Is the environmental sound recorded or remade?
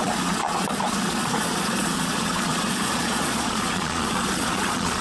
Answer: remade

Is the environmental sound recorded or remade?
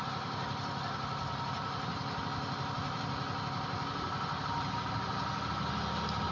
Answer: recorded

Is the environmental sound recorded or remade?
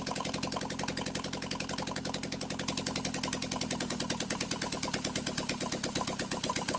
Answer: recorded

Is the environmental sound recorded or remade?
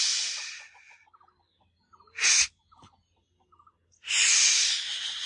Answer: recorded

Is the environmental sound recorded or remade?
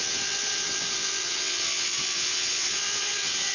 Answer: remade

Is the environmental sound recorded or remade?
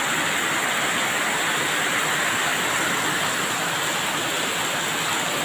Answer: recorded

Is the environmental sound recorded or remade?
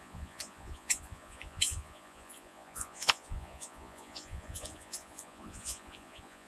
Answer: remade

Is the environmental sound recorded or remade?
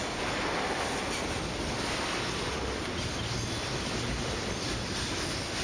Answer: recorded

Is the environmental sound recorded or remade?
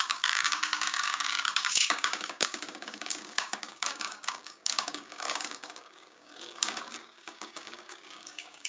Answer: remade